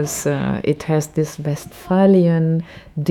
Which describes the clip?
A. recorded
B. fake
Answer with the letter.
B